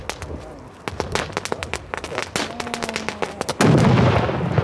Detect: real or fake real